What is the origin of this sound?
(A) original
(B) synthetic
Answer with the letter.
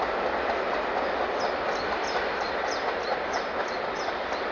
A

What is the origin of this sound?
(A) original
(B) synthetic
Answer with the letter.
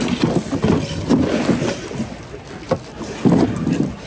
A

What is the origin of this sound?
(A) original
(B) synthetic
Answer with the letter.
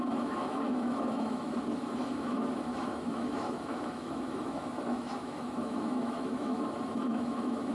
B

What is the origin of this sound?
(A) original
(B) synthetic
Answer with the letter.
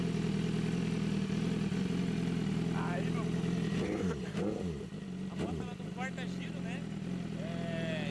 A